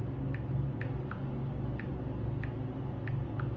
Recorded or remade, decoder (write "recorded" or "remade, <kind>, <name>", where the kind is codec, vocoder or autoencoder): recorded